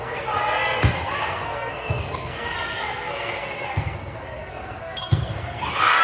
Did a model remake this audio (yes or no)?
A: yes